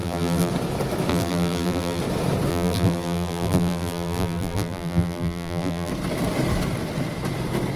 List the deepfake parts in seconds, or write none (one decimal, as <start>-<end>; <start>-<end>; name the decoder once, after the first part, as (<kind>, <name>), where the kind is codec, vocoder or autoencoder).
0.0-0.5 (vocoder, BigVGAN v2); 1.1-2.0; 2.5-5.9